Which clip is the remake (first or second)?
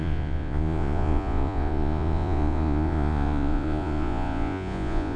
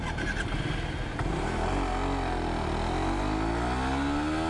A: first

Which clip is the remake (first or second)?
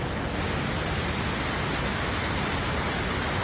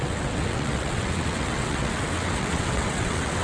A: second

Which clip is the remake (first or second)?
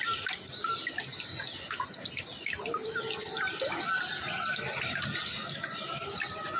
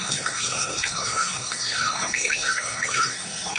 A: second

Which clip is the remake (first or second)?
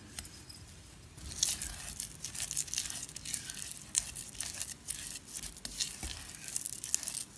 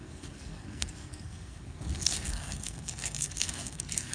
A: second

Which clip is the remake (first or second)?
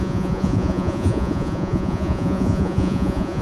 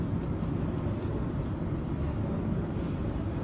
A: first